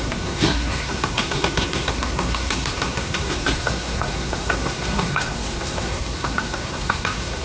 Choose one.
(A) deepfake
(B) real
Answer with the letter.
A